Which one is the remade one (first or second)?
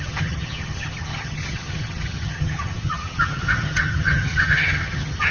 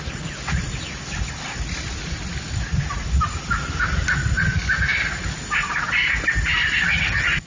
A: first